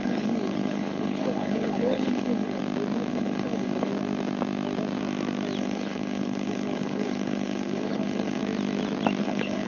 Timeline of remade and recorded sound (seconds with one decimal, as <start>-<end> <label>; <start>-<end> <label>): 0.0-2.6 remade; 2.6-3.1 recorded; 3.1-3.9 remade; 3.9-5.6 recorded; 5.6-8.4 remade; 8.4-9.2 recorded; 9.2-9.7 remade